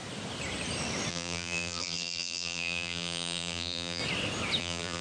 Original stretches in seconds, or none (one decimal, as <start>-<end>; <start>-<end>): 0.0-1.1; 4.0-4.6